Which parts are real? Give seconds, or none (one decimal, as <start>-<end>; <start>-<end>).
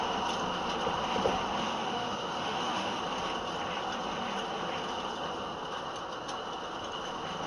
0.0-1.6; 3.0-7.5